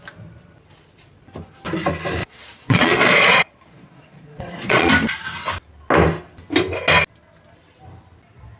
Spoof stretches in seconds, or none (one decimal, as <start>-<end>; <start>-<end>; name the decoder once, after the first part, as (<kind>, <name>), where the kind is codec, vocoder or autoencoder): 2.2-4.9 (vocoder, Vocos)